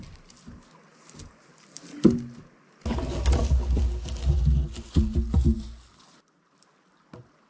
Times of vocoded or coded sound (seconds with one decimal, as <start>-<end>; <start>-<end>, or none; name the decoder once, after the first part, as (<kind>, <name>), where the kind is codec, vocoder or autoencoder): none